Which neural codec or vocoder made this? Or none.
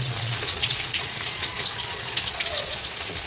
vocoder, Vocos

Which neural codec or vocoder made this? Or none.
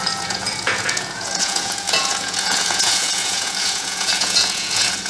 vocoder, Vocos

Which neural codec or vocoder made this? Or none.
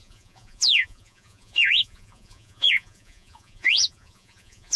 vocoder, Vocos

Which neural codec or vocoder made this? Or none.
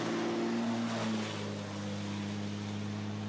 none